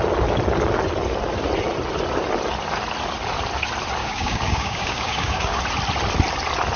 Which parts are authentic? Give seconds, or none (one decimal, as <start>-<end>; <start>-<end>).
0.0-4.0; 5.6-6.8